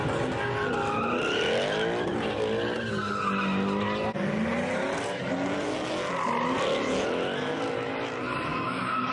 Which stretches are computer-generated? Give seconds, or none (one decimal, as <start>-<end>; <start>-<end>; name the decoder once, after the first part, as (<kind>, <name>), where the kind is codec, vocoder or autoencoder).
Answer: 8.5-9.1 (codec, DAC)